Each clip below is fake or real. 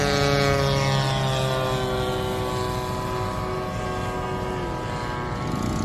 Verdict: real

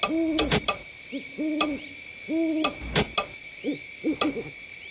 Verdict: real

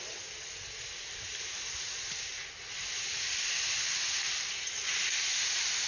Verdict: real